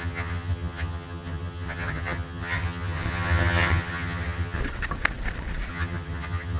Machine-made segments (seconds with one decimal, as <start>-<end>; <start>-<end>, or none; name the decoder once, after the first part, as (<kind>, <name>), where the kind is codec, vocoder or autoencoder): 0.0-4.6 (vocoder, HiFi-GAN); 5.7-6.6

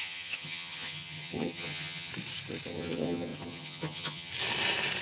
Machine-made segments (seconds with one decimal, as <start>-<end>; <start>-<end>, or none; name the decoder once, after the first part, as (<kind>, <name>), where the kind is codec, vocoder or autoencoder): 0.0-2.1 (vocoder, HiFi-GAN); 2.7-4.3

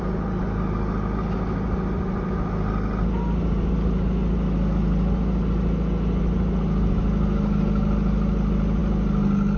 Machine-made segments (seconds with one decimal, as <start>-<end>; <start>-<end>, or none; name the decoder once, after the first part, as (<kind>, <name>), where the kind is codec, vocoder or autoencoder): none

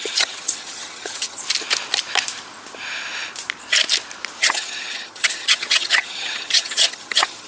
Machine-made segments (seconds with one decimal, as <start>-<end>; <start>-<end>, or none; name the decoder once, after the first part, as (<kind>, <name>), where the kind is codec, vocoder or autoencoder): 0.0-1.4 (vocoder, HiFi-GAN); 4.4-7.5

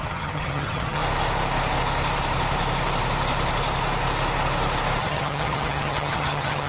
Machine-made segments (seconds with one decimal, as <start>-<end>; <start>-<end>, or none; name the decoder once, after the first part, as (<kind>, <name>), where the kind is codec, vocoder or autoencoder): 0.0-1.0 (vocoder, HiFi-GAN); 5.0-6.7

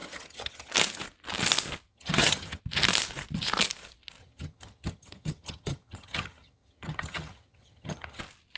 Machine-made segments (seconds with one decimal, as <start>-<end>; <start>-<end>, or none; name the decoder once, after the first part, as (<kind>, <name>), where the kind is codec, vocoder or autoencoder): 0.0-0.7 (vocoder, HiFi-GAN); 1.9-2.6; 4.2-8.2